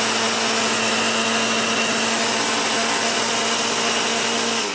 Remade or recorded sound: recorded